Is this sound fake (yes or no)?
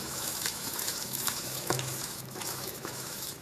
yes